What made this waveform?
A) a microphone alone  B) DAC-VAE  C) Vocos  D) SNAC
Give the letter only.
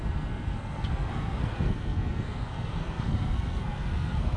D